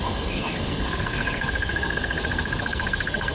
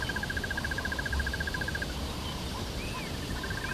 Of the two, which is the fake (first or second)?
first